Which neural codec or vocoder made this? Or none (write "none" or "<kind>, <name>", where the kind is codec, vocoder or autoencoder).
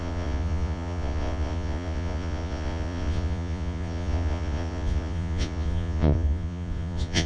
vocoder, Vocos